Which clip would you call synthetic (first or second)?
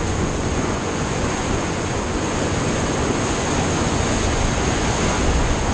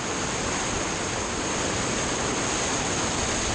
first